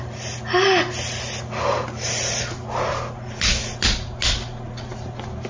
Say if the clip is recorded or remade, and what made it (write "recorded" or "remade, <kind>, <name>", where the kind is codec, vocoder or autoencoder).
recorded